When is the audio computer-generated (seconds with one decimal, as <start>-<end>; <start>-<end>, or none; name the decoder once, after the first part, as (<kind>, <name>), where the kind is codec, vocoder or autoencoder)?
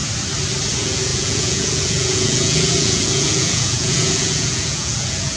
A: 0.7-5.4 (vocoder, Vocos)